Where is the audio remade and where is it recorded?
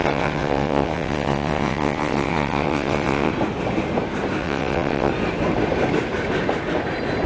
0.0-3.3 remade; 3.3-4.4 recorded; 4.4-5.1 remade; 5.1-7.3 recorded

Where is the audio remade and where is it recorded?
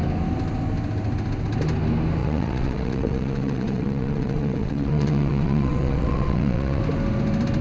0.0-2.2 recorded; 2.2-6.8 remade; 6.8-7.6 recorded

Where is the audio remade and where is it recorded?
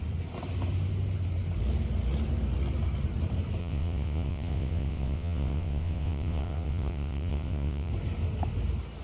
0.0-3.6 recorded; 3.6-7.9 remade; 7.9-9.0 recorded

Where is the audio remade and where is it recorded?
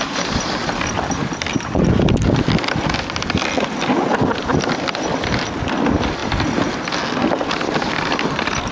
0.0-8.7 recorded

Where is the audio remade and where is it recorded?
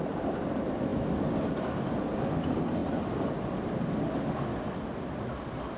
0.0-5.8 recorded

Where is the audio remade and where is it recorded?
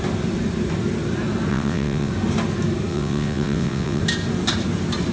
0.0-1.5 recorded; 1.5-2.1 remade; 2.1-2.9 recorded; 2.9-4.0 remade; 4.0-5.1 recorded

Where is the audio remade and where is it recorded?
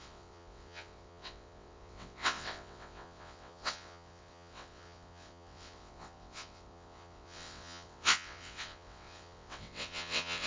0.0-10.5 remade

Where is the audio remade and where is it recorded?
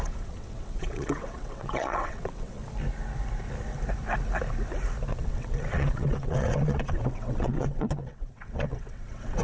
0.0-2.6 remade; 2.6-5.1 recorded; 5.1-9.4 remade